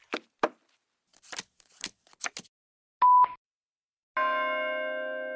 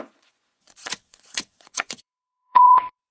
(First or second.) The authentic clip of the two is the first